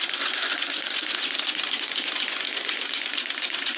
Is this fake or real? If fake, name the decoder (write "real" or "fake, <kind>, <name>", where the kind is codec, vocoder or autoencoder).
fake, vocoder, Vocos